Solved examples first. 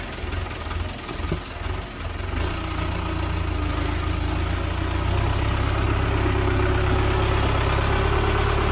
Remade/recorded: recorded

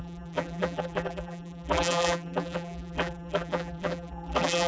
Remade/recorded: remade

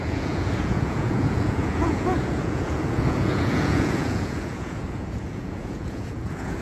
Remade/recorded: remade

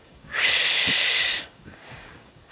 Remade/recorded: remade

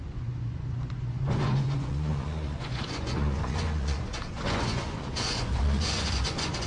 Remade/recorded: remade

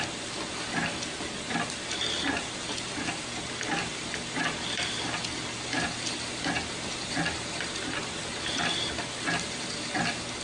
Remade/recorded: recorded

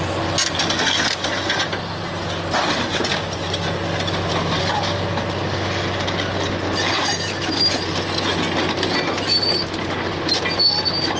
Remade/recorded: recorded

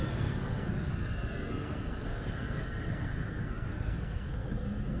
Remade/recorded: remade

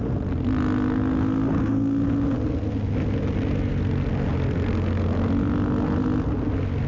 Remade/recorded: recorded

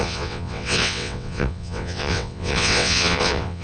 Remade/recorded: remade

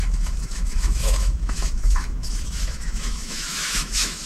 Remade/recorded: remade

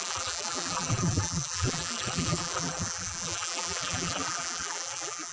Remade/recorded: remade